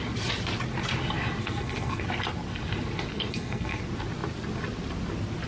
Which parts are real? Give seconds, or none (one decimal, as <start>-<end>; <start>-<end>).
0.0-1.4; 2.0-3.1; 3.8-5.5